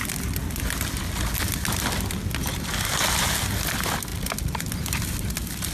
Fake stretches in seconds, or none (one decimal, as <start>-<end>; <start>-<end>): 0.4-0.9